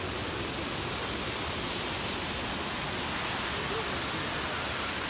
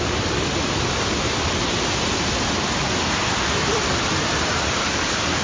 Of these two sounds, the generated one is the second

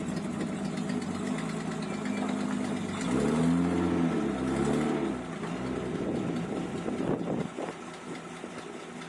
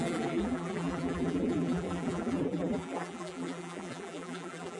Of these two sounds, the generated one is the second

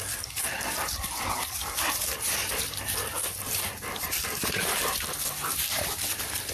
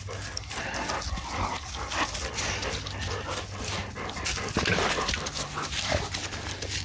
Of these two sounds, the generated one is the first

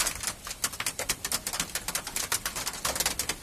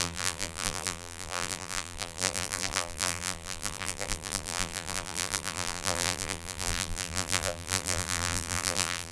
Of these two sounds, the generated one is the second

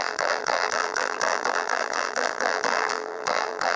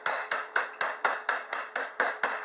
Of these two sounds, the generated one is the first